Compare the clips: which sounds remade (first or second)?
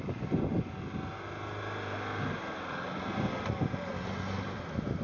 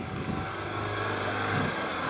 second